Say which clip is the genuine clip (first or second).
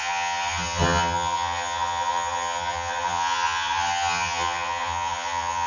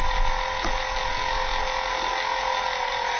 second